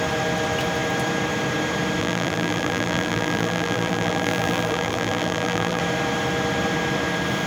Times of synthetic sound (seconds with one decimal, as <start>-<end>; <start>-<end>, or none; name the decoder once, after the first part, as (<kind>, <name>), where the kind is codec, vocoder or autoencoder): 2.0-5.8 (vocoder, BigVGAN v2)